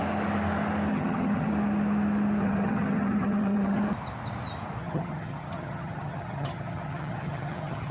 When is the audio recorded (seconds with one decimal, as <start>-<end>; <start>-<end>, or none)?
0.0-0.9; 1.5-2.4; 3.8-4.8

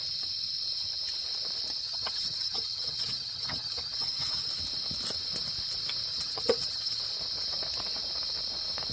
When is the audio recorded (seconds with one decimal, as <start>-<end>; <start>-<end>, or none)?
0.0-1.8; 4.5-6.1; 7.0-8.9

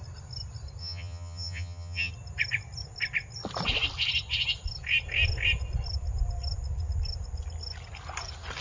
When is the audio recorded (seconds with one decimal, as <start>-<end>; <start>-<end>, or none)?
0.0-0.8; 2.1-8.6

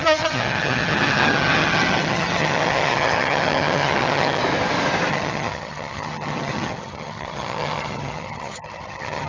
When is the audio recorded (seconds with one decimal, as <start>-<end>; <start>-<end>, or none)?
4.4-5.1

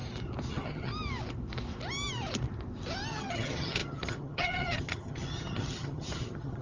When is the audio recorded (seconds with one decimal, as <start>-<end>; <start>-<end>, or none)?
0.0-0.5; 0.9-3.1

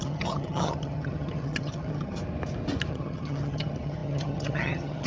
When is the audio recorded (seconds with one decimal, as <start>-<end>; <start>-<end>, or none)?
2.2-2.9

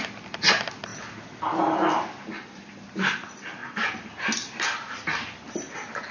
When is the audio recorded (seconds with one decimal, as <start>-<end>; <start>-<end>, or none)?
0.0-6.1